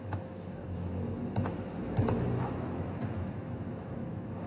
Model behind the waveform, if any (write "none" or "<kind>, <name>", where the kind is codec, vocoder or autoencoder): autoencoder, DAC-VAE